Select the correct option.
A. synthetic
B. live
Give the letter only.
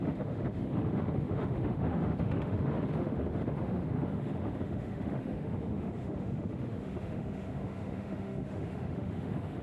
A